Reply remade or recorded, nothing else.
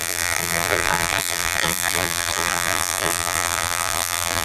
remade